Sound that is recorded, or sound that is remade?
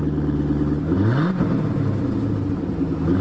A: recorded